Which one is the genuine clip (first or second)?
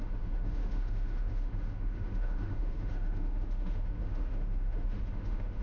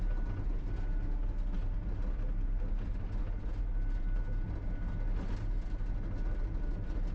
second